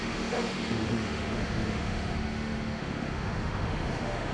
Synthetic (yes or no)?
yes